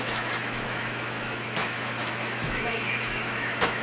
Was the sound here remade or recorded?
remade